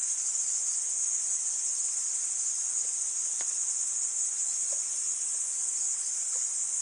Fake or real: real